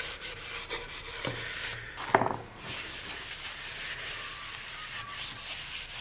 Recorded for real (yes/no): yes